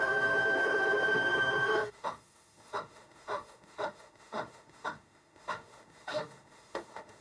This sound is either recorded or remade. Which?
remade